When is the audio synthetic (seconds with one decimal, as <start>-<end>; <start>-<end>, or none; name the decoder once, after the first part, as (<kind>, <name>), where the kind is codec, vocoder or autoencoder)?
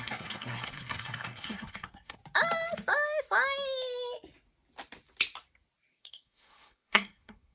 0.0-2.2 (codec, SNAC); 5.9-7.5